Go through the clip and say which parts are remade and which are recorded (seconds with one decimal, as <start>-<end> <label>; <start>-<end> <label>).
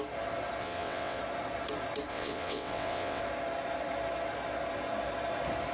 0.0-0.6 recorded; 0.6-1.2 remade; 1.2-2.1 recorded; 2.1-3.2 remade; 3.2-5.7 recorded